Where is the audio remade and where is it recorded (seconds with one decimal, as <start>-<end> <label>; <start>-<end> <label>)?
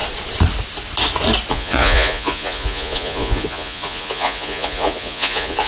0.0-1.5 recorded; 1.5-5.7 remade